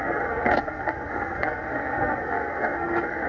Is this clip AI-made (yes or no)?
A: yes